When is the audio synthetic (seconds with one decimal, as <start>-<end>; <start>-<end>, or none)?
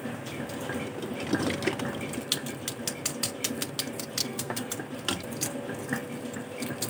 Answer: 4.2-4.7